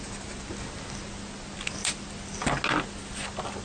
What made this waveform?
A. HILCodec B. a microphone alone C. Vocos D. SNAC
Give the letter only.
B